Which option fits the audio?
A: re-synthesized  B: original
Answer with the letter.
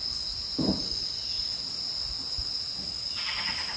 B